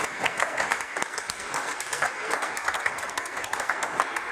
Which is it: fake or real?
fake